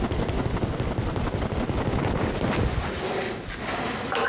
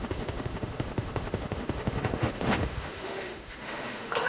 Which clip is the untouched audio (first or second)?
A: first